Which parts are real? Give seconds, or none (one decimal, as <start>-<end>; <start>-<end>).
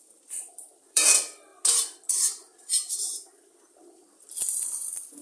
1.5-3.3